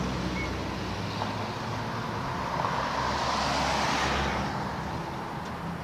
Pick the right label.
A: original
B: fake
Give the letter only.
A